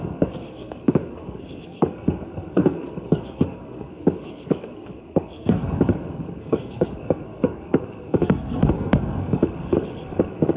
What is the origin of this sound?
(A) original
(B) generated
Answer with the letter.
B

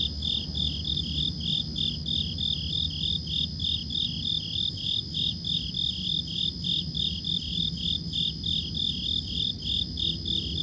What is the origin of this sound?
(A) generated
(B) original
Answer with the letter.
B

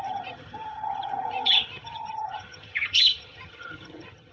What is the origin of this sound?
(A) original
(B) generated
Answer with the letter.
B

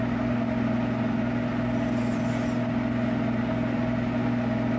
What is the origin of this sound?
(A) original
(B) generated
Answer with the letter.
A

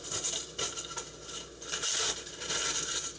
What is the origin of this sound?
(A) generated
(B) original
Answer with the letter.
A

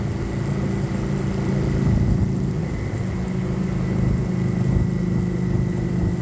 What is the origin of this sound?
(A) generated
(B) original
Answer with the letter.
B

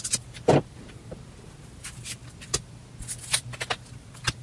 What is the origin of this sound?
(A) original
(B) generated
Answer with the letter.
A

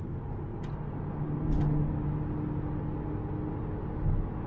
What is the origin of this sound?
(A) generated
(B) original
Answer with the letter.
B